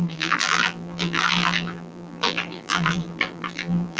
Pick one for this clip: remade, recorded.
remade